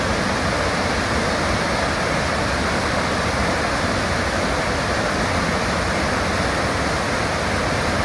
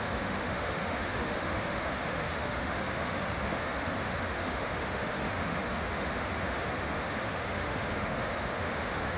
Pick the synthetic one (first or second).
second